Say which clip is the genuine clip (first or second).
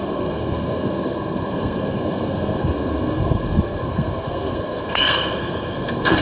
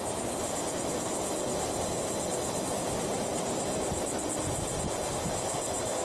second